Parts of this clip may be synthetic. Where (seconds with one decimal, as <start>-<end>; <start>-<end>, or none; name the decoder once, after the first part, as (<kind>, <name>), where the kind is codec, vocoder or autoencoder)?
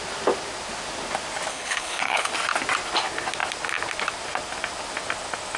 1.5-2.3 (codec, HILCodec)